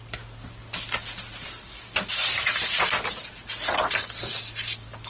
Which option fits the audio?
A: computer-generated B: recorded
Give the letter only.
B